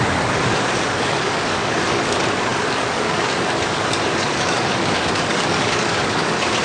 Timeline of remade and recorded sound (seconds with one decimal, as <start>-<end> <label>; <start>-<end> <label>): 0.0-6.6 remade